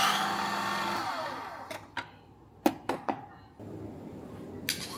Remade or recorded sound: recorded